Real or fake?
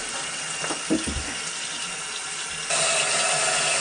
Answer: real